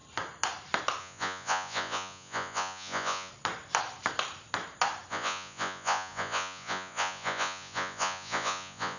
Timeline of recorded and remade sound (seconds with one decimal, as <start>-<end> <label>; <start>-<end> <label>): 0.0-1.0 recorded; 1.0-3.3 remade; 3.3-5.1 recorded; 5.1-9.0 remade